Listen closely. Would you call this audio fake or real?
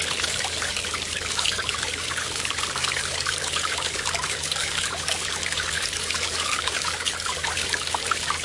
fake